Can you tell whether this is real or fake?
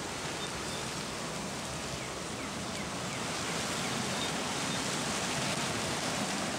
real